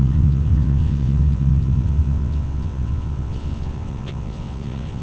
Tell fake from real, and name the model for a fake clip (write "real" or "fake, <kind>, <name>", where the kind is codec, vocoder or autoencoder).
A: fake, vocoder, WaveNeXt